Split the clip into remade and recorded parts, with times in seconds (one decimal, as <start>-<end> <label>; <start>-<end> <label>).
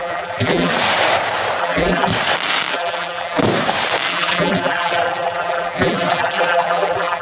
0.0-0.7 remade; 0.7-1.6 recorded; 1.6-2.1 remade; 2.1-2.7 recorded; 2.7-3.4 remade; 3.4-4.1 recorded; 4.1-7.2 remade